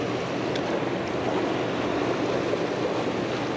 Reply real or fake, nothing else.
real